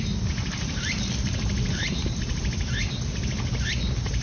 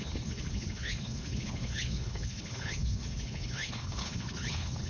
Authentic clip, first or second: first